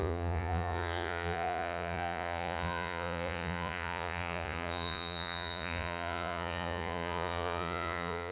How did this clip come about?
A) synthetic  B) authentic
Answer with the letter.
A